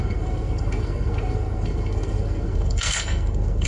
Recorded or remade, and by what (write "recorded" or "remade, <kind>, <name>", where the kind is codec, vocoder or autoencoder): remade, codec, SNAC